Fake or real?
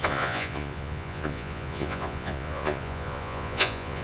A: fake